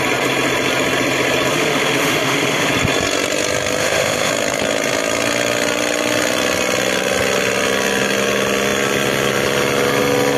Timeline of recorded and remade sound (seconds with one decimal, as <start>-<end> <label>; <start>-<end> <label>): 0.0-1.5 recorded; 1.5-2.7 remade; 2.7-3.8 recorded; 3.8-4.3 remade; 4.3-10.4 recorded